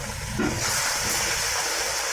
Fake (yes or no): no